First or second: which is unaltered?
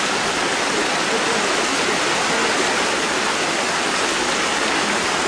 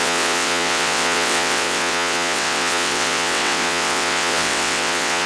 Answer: first